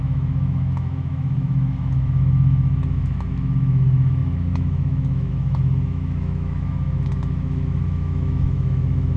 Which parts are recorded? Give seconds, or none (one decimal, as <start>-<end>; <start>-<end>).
none